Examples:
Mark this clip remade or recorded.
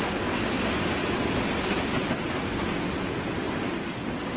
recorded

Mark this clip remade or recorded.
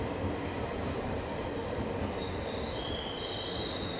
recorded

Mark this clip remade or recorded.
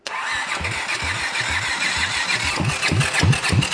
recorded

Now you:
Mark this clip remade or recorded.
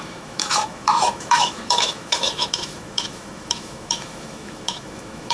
remade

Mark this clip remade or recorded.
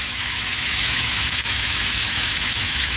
remade